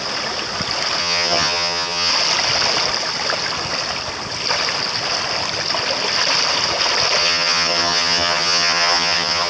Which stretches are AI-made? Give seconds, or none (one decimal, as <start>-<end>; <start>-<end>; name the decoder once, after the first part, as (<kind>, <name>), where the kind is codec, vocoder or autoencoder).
1.0-2.1 (vocoder, HiFi-GAN); 7.2-9.5